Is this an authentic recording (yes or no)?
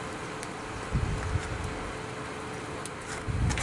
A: yes